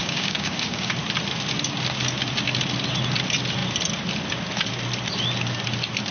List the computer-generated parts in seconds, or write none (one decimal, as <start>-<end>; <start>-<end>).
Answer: 0.0-0.9